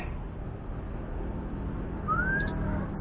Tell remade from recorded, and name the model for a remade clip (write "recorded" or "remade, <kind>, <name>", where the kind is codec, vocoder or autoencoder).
recorded